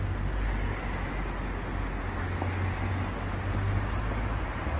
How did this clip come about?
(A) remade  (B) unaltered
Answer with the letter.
B